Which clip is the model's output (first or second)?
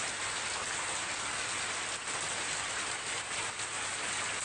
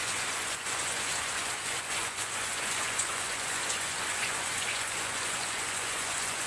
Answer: second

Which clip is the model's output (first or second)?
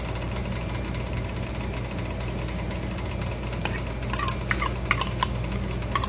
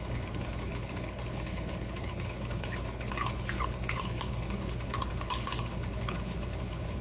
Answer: second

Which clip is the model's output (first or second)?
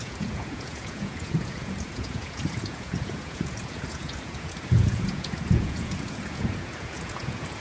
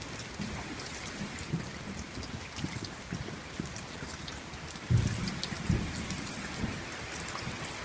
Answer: first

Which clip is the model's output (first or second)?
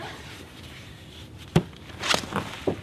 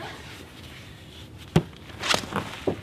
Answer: first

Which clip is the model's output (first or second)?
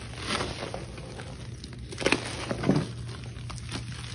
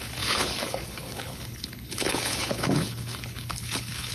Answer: second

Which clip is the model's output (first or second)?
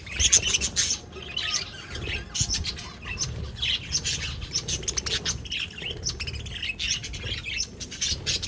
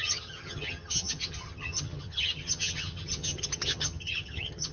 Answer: second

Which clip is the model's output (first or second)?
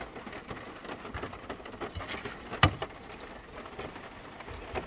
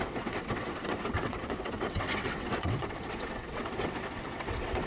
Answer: second